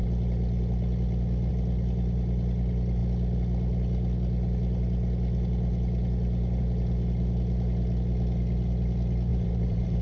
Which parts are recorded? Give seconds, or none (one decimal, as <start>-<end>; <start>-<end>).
0.0-9.3